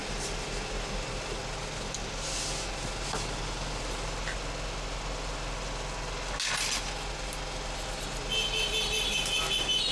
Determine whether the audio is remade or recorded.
recorded